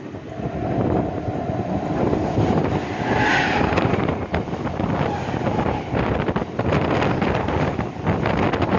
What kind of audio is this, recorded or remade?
recorded